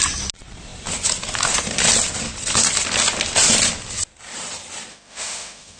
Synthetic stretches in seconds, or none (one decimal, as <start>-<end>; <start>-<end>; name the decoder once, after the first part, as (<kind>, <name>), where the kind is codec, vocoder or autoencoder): 4.9-5.8 (autoencoder, DAC-VAE)